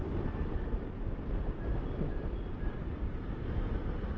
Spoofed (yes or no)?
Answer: no